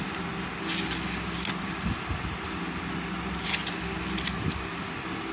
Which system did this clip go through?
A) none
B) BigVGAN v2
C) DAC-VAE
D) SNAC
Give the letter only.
A